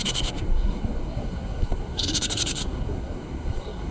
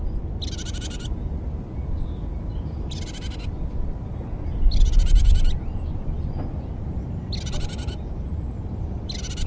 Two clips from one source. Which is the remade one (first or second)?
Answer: first